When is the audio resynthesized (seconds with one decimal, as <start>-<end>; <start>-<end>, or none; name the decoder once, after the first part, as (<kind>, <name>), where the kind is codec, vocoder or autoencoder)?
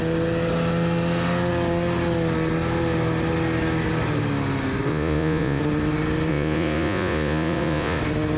4.9-5.6 (vocoder, Vocos); 6.3-8.0